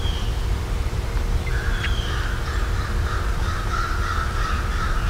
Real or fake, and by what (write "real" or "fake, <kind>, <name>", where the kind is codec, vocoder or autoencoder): real